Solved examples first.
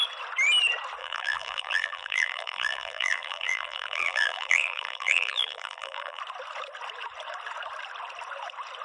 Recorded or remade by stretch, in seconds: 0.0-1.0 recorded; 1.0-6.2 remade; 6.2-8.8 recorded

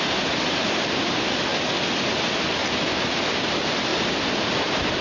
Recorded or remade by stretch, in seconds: 0.0-1.5 remade; 1.5-2.1 recorded; 2.1-2.6 remade; 2.6-3.4 recorded; 3.4-3.9 remade; 3.9-4.5 recorded; 4.5-5.0 remade

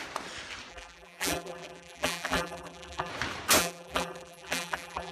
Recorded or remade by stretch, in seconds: 0.0-0.7 recorded; 0.7-3.1 remade; 3.1-3.6 recorded; 3.6-5.1 remade

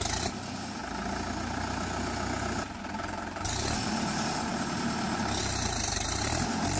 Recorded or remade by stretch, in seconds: 0.0-0.8 remade; 0.8-2.4 recorded; 2.4-6.8 remade

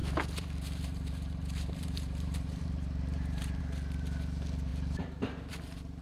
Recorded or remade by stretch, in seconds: 0.0-3.6 remade; 3.6-6.0 recorded